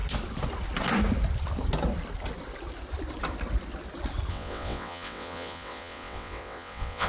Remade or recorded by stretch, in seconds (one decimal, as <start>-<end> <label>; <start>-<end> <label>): 0.0-4.3 recorded; 4.3-7.1 remade